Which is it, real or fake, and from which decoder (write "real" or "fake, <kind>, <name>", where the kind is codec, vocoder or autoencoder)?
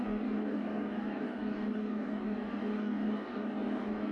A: fake, codec, DAC